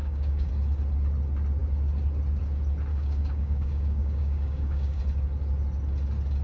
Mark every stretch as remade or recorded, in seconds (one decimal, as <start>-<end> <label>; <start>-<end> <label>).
0.0-0.5 remade; 0.5-2.9 recorded; 2.9-5.0 remade; 5.0-6.4 recorded